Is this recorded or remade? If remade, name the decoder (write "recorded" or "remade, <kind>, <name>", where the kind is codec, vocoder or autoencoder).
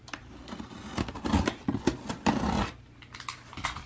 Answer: recorded